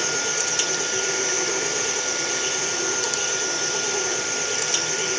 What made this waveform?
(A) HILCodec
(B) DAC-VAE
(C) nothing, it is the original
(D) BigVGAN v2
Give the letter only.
D